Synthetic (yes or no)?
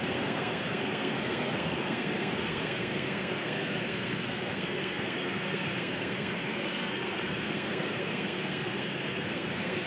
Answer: yes